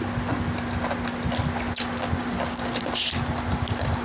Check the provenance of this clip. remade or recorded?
recorded